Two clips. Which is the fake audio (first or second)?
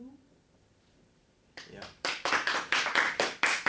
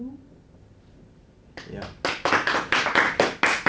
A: first